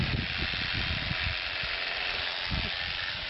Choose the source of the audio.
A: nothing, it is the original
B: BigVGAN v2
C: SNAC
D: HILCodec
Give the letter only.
A